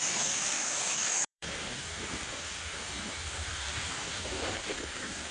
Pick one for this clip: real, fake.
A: fake